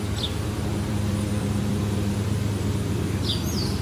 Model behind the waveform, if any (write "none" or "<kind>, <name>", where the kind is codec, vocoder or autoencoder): vocoder, BigVGAN v2